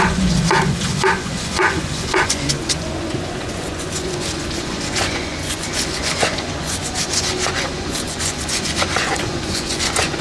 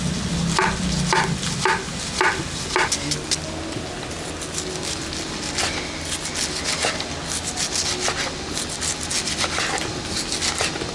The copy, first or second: first